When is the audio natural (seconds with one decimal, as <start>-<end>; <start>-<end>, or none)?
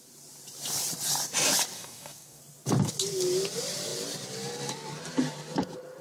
0.0-1.7; 2.4-6.0